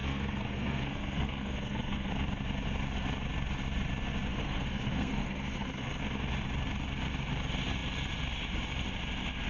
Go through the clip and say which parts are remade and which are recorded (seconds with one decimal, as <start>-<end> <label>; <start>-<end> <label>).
0.0-2.1 remade; 2.1-4.3 recorded; 4.3-6.0 remade; 6.0-9.5 recorded